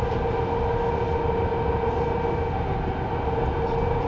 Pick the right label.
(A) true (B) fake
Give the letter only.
A